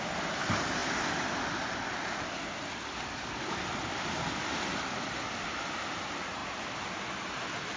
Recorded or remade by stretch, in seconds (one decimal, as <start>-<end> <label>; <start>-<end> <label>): 0.0-7.8 recorded